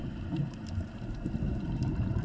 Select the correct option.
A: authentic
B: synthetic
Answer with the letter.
B